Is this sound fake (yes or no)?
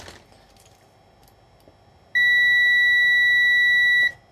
no